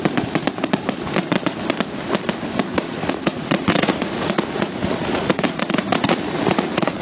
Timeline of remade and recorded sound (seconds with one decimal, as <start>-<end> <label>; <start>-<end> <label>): 0.0-2.7 recorded; 2.7-7.0 remade